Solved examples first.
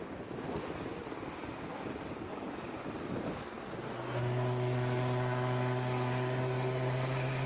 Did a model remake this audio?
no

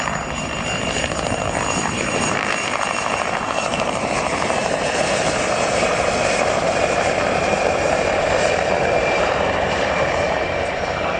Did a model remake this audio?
yes